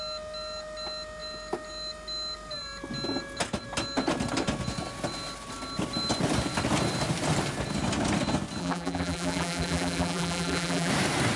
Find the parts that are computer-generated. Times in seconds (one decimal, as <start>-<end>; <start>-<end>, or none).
8.6-10.9

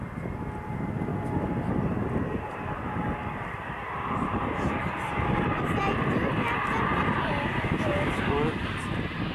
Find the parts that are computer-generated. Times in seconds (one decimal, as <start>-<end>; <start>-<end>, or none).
none